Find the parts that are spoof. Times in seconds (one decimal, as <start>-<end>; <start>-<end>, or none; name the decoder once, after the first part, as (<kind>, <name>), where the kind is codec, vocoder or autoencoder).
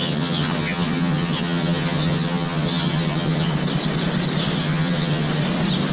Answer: 0.0-3.5 (vocoder, HiFi-GAN); 4.6-5.3